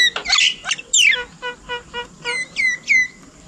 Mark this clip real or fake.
real